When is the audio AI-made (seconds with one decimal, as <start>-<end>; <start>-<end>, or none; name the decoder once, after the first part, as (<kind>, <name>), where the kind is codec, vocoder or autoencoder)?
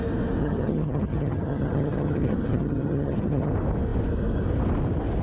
0.4-3.5 (vocoder, HiFi-GAN)